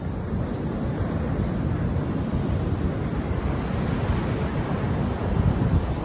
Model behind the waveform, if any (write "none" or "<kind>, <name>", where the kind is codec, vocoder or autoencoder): none